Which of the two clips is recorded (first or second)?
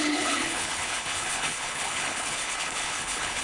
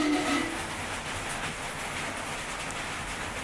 second